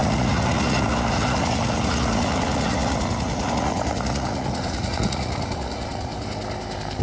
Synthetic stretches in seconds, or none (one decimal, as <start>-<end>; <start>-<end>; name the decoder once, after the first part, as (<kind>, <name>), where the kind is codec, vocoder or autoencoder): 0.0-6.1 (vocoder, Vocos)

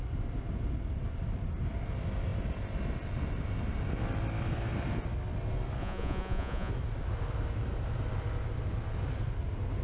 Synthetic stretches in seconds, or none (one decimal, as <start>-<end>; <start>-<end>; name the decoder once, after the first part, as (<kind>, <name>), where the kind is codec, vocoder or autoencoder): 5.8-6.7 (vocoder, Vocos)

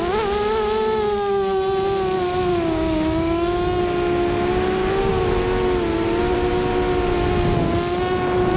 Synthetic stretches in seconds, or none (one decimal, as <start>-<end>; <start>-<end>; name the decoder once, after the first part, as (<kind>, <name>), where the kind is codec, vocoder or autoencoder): 2.5-3.8 (codec, DAC)

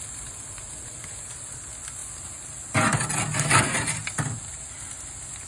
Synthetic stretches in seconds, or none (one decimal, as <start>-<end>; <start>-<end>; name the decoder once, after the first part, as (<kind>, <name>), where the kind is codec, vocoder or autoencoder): none